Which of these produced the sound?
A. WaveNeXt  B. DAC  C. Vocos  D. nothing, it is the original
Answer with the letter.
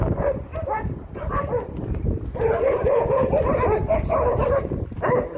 D